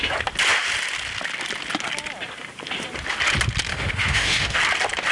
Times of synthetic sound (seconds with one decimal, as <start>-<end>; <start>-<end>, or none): 3.7-4.6